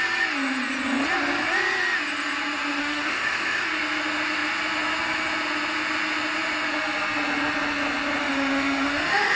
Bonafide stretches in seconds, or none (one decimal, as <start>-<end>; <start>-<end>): 0.0-2.8; 3.6-8.2